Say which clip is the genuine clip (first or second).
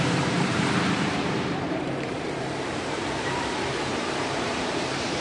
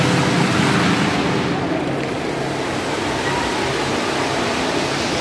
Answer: second